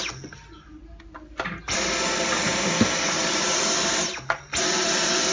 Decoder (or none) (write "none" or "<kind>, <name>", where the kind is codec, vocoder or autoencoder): none